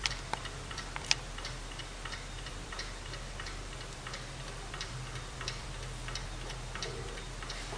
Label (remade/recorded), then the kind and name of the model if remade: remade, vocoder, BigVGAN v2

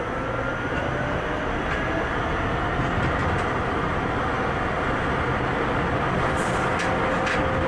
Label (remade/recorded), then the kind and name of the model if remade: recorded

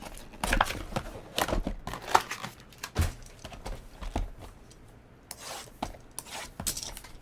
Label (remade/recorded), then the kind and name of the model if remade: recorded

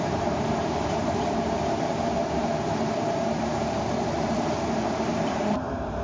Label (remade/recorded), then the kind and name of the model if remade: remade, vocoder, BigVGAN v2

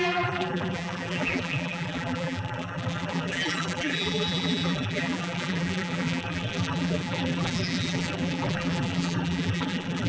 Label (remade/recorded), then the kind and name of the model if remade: remade, vocoder, BigVGAN v2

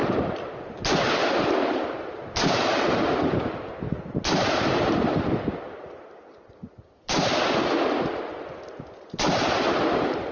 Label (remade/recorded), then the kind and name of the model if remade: remade, vocoder, BigVGAN v2